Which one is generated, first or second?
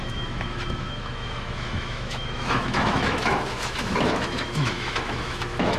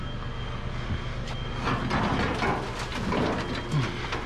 first